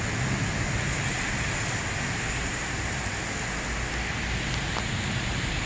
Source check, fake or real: real